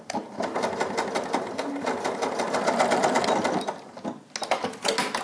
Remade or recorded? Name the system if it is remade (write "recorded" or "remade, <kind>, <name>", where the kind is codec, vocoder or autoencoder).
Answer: recorded